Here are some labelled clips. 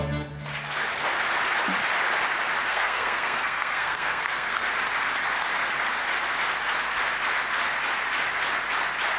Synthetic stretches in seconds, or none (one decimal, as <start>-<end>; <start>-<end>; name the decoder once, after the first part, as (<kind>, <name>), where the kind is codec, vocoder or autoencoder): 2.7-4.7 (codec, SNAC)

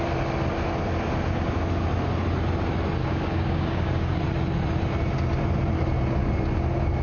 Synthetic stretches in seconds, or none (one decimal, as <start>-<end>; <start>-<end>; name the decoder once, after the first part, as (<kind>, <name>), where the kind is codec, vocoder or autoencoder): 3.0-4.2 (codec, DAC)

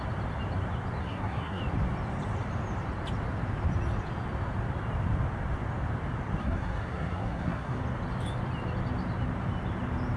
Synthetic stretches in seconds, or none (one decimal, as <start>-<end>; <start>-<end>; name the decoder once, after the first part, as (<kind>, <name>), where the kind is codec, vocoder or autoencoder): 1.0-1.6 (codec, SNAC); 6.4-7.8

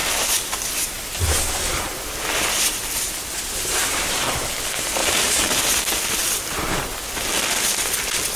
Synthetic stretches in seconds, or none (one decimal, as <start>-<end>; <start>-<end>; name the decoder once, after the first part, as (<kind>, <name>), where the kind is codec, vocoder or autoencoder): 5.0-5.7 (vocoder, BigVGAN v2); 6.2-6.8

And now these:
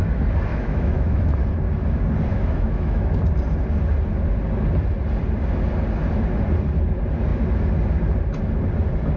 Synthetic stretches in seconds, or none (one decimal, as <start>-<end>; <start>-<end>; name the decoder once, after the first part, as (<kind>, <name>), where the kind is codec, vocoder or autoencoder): 0.5-1.3 (autoencoder, DAC-VAE); 2.3-3.1

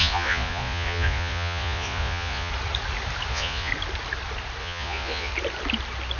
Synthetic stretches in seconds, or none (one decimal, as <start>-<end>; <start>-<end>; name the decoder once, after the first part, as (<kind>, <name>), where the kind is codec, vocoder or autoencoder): 0.0-2.5 (vocoder, Vocos); 3.3-3.7; 4.6-5.3

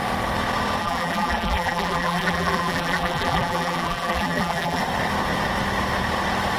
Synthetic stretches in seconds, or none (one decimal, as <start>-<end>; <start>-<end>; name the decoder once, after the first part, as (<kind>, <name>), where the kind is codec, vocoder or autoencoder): 0.8-4.8 (vocoder, BigVGAN v2)

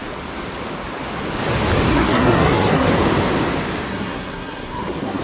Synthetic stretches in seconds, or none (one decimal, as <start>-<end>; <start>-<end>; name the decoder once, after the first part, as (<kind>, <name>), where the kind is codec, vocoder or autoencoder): 1.9-2.9 (codec, SNAC); 3.9-5.2